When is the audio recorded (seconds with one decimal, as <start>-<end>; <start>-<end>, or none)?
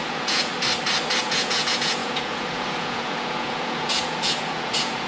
0.5-1.2